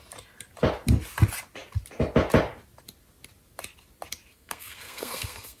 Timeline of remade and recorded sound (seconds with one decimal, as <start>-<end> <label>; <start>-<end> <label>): 0.0-4.3 recorded; 4.3-5.6 remade